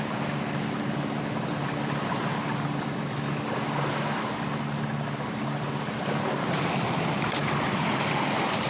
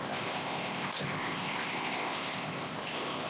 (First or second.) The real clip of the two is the first